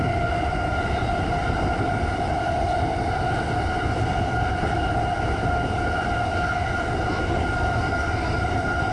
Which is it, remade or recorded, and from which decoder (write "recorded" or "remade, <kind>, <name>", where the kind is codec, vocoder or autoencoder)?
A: recorded